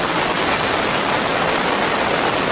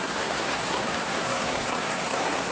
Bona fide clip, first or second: first